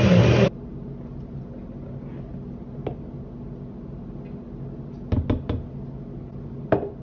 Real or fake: real